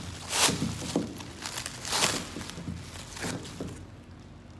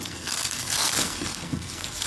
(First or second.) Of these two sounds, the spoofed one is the second